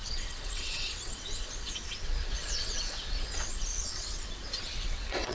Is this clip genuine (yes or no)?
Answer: no